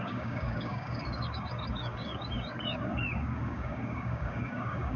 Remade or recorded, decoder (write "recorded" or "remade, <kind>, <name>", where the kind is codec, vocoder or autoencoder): remade, codec, DAC